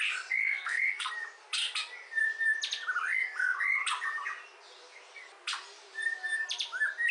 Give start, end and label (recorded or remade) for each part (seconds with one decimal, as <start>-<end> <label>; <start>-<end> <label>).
0.0-0.4 recorded; 0.4-1.1 remade; 1.1-7.1 recorded